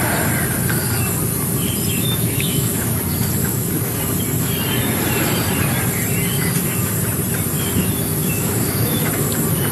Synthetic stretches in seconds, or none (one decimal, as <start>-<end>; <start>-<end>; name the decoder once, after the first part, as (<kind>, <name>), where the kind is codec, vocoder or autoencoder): 2.0-3.0 (autoencoder, DAC-VAE); 3.4-4.0; 8.2-9.1